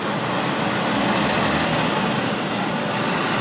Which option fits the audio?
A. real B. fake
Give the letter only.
A